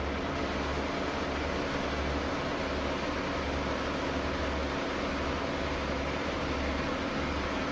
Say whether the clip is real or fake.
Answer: real